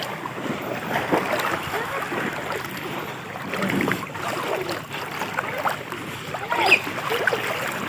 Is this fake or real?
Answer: real